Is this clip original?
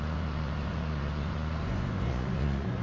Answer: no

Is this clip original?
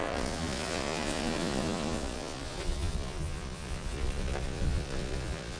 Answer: no